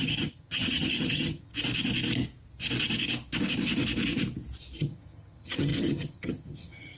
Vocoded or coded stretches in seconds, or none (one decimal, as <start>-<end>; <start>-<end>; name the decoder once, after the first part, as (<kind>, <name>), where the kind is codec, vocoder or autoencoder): 0.0-1.5 (vocoder, HiFi-GAN); 4.8-7.0